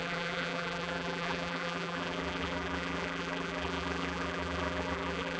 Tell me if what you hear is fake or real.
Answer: fake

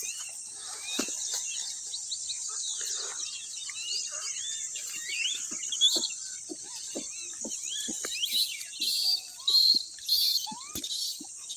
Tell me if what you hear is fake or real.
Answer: real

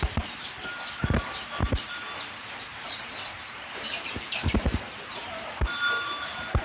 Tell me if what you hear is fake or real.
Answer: fake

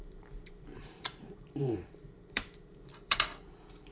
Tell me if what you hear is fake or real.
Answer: fake